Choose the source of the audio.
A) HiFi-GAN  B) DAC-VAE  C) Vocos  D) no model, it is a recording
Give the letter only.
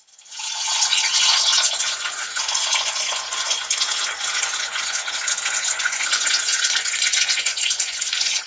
C